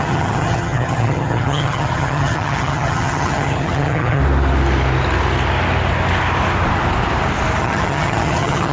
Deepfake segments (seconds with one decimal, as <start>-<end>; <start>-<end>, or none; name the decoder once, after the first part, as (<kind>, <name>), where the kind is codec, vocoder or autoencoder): 0.0-4.2 (vocoder, HiFi-GAN); 7.6-8.7